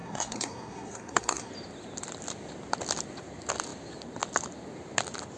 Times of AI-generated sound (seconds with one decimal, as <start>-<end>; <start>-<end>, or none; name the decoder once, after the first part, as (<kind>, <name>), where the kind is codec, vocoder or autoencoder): 0.0-1.5 (codec, SNAC)